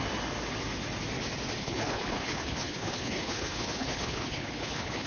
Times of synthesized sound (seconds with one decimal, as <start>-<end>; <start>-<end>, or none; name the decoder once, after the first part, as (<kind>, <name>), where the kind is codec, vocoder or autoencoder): 1.6-5.1 (codec, HILCodec)